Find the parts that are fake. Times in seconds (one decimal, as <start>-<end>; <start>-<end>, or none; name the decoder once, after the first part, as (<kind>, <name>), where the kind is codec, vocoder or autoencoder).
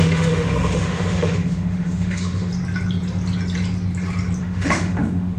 0.0-2.5 (autoencoder, DAC-VAE); 4.4-5.4